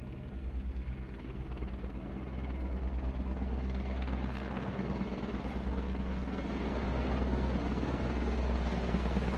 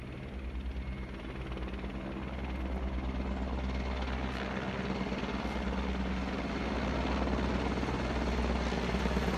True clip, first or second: second